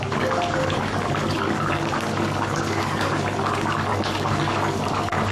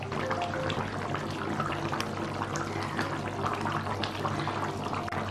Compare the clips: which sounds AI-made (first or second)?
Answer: first